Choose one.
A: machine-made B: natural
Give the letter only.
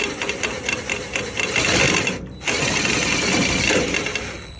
B